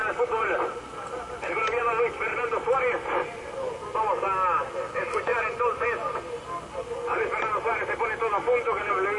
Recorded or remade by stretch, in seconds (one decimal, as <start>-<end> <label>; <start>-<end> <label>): 0.0-9.2 recorded